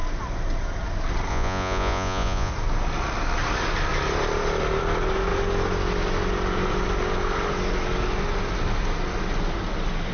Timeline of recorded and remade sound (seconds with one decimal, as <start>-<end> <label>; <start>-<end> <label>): 0.0-1.3 recorded; 1.3-2.5 remade; 2.5-10.1 recorded